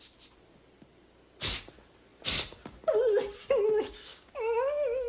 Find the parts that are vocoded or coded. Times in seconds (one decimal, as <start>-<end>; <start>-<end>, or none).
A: 4.1-5.1